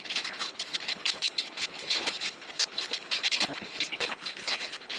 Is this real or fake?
fake